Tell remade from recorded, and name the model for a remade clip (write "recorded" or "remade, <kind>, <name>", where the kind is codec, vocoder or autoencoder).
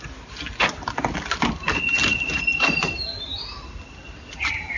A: recorded